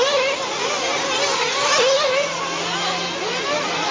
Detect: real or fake real